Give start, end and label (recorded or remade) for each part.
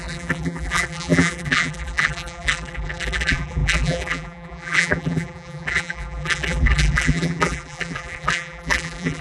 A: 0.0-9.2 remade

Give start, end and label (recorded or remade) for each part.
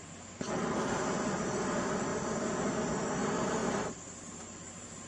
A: 0.0-1.0 remade; 1.0-3.6 recorded; 3.6-5.1 remade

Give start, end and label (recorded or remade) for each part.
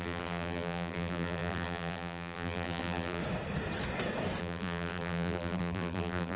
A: 0.0-3.2 remade; 3.2-4.4 recorded; 4.4-6.4 remade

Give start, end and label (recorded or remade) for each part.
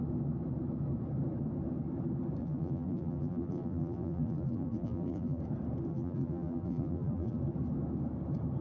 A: 0.0-2.4 recorded; 2.4-5.4 remade; 5.4-5.9 recorded; 5.9-7.4 remade; 7.4-8.6 recorded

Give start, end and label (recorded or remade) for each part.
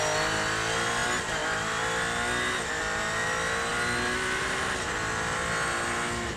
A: 0.0-6.4 recorded